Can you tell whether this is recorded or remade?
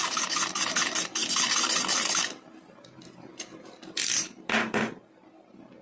recorded